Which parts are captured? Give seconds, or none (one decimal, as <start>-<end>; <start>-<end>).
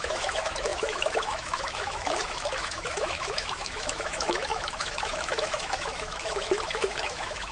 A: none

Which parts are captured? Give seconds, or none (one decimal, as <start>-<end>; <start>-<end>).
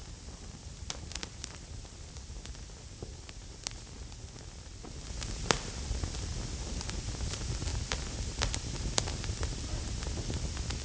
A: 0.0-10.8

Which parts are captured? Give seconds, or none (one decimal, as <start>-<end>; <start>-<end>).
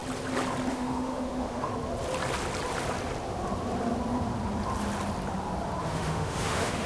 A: 0.0-0.7; 1.7-5.8